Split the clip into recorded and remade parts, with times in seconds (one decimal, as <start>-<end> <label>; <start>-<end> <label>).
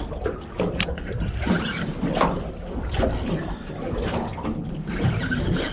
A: 0.0-5.7 recorded